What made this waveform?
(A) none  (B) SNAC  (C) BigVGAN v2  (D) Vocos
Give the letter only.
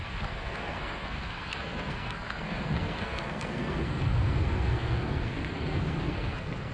B